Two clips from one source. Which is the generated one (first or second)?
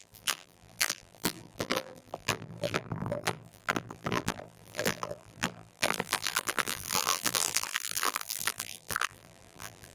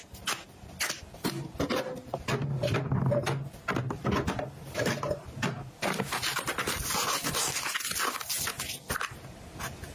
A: first